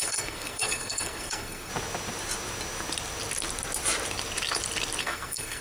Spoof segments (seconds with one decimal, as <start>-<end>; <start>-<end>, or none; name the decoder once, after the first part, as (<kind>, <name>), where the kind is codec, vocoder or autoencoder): 0.0-1.7 (codec, SNAC); 5.0-5.6